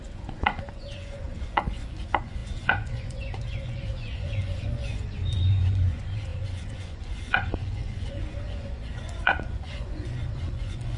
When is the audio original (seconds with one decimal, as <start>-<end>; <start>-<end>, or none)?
none